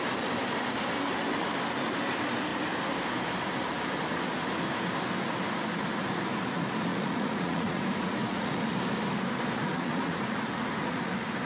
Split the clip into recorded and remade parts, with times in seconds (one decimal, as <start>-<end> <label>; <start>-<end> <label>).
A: 0.0-6.9 recorded; 6.9-8.6 remade; 8.6-9.6 recorded; 9.6-11.0 remade; 11.0-11.5 recorded